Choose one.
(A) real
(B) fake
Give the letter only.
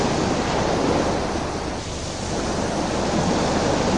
A